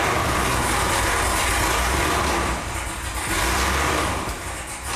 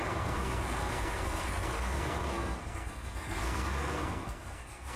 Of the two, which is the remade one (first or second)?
second